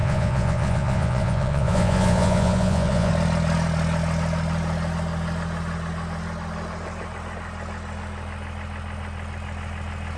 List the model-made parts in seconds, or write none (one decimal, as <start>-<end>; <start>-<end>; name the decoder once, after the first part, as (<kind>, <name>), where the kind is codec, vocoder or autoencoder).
0.0-3.1 (vocoder, Vocos)